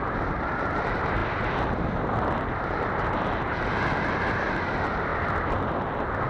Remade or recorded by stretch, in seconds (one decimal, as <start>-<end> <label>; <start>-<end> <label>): 0.0-6.3 recorded